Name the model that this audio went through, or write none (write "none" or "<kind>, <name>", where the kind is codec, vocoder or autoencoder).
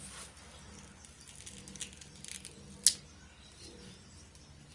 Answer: none